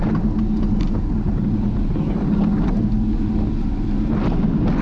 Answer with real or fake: real